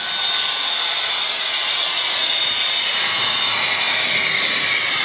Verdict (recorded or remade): recorded